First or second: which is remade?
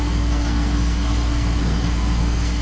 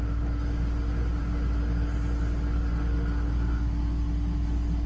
first